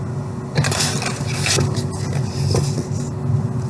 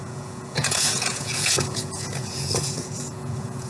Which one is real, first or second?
first